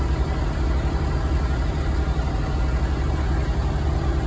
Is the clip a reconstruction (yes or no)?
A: no